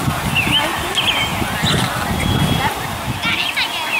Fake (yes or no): no